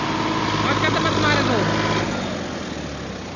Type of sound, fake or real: real